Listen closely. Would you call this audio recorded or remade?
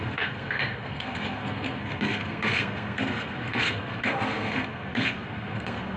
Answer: remade